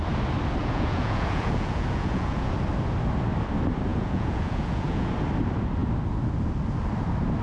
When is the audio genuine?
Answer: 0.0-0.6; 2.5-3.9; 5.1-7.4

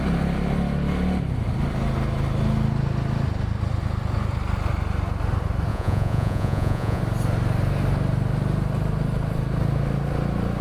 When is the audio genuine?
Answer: 0.0-5.7; 7.0-10.6

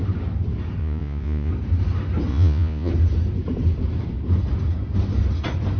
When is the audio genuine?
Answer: 0.0-0.8; 1.5-2.3; 2.9-5.8

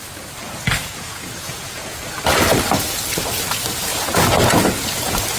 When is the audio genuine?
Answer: 0.0-0.8; 2.0-5.4

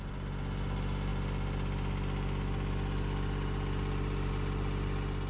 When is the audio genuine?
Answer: 0.0-5.3

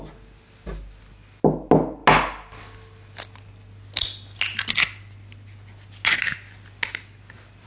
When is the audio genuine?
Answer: 0.0-7.7

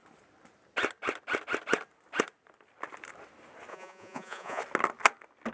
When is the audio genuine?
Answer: 0.0-3.7; 4.6-5.5